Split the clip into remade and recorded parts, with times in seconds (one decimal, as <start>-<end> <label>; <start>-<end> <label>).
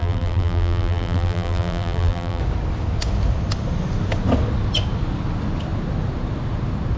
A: 0.0-2.4 remade; 2.4-7.0 recorded